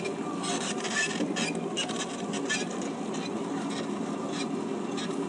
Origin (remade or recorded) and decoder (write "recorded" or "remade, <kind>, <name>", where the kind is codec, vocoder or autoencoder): recorded